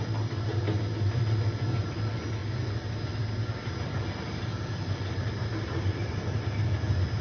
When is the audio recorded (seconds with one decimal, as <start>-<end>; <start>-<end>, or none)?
0.5-1.8; 2.4-3.8